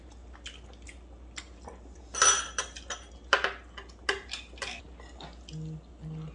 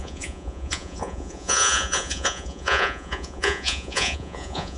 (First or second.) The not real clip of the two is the second